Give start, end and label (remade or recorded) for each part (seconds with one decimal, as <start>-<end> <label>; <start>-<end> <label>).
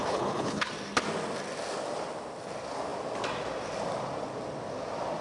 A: 0.0-0.7 remade; 0.7-5.2 recorded